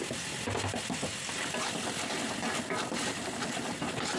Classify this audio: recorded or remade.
recorded